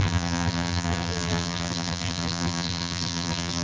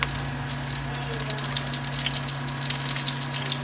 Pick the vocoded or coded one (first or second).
first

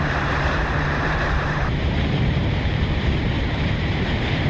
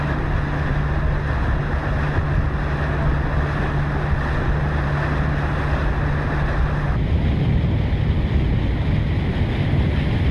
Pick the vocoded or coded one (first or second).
first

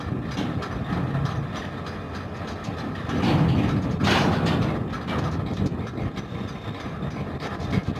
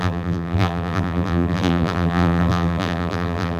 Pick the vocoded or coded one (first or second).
second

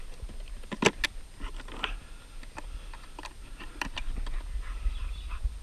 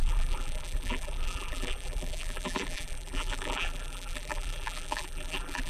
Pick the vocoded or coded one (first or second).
second